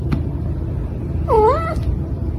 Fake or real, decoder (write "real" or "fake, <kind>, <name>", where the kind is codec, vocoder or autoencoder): real